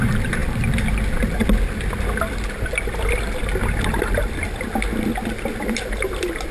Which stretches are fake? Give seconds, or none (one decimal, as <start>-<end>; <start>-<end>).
none